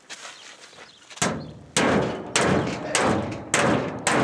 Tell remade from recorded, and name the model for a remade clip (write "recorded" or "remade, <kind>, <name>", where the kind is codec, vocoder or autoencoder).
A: recorded